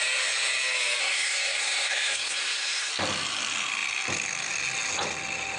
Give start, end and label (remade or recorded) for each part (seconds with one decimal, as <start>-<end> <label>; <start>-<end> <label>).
0.0-1.0 recorded; 1.0-2.9 remade; 2.9-5.6 recorded